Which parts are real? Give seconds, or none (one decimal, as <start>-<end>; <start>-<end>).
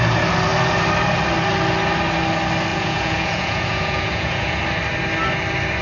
0.0-2.7; 4.6-5.8